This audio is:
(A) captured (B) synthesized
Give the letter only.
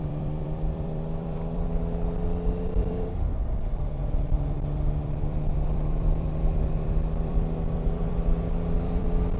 B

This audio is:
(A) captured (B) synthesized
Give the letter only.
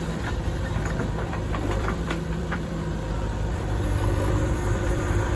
B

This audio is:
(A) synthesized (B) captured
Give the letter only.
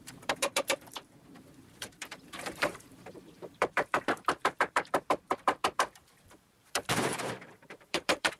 A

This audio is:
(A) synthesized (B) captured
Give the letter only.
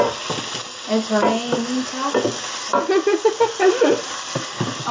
B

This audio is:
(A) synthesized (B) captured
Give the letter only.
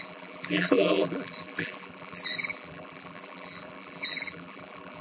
A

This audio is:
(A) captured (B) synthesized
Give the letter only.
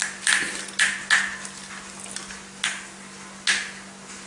A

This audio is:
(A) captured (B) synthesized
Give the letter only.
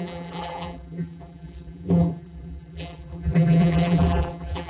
B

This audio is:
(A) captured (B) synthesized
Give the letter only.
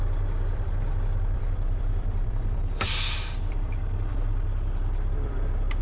B